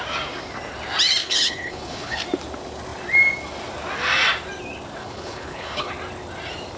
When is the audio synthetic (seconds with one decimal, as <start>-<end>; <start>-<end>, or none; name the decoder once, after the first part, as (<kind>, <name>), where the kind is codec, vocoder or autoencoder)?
1.2-2.2 (codec, HILCodec); 5.0-5.9